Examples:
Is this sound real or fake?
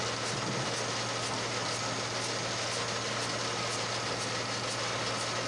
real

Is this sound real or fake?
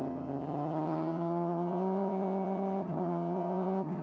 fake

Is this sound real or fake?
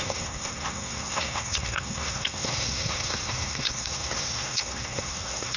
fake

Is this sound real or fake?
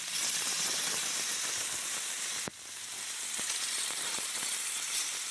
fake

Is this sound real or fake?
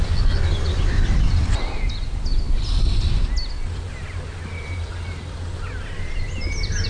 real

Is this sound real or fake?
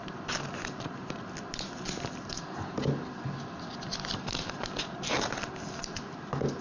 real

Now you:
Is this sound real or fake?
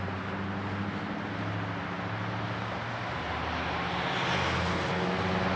real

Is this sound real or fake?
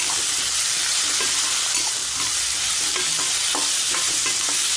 real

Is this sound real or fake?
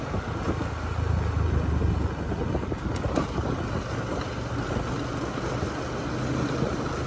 real